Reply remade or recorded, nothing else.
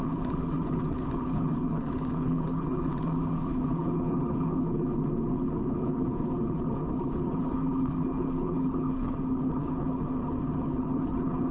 remade